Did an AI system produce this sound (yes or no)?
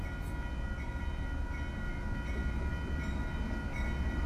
no